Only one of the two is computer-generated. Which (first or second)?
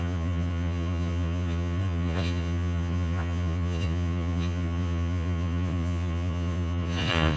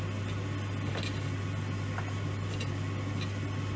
first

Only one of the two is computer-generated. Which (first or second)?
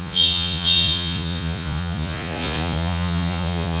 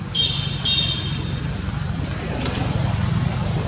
first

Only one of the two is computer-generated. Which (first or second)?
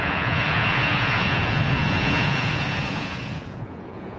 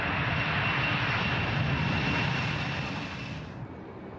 first